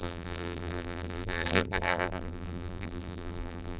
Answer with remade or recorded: remade